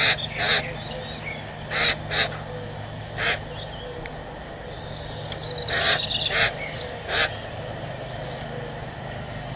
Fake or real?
real